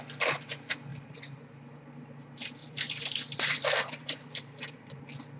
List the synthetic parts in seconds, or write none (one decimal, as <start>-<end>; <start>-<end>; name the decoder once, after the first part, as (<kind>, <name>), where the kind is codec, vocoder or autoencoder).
0.9-2.0 (vocoder, BigVGAN v2); 2.6-5.0